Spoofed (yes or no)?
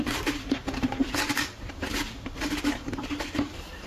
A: yes